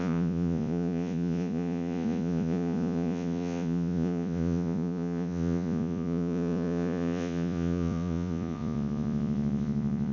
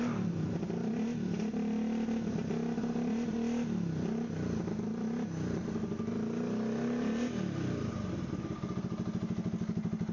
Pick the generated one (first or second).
first